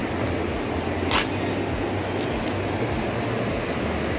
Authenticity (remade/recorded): recorded